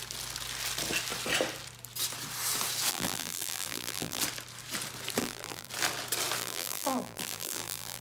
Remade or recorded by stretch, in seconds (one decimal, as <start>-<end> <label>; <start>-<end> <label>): 0.0-2.9 recorded; 2.9-4.2 remade; 4.2-5.2 recorded; 5.2-5.7 remade; 5.7-6.4 recorded; 6.4-8.0 remade